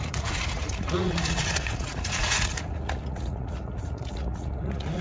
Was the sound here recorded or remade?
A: remade